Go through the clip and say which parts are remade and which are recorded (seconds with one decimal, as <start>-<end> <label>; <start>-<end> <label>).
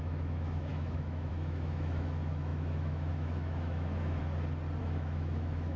0.0-4.2 remade; 4.2-4.8 recorded; 4.8-5.8 remade